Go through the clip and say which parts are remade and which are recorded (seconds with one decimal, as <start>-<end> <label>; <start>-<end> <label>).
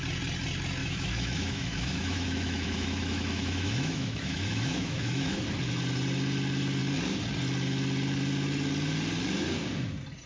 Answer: 0.0-0.8 recorded; 0.8-5.4 remade; 5.4-10.3 recorded